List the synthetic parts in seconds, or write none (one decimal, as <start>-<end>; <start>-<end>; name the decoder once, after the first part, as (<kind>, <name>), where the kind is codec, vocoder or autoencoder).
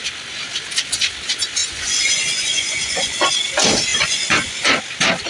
1.6-3.3 (vocoder, Vocos); 3.9-4.8